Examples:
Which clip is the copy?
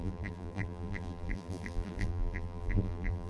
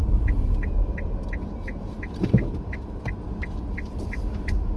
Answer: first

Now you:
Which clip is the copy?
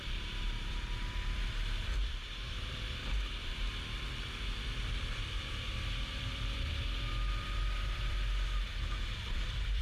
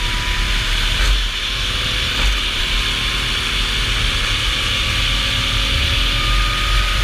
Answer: first